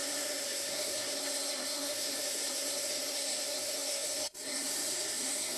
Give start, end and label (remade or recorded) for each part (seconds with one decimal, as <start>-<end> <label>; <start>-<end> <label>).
0.0-5.6 remade